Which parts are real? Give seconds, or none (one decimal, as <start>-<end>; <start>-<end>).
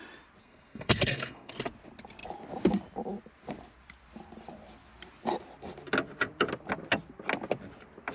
0.0-0.4; 1.5-8.1